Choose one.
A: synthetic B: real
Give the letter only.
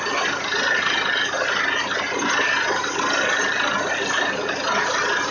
B